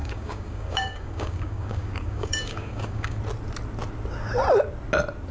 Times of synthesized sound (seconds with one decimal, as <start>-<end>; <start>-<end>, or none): 0.0-3.2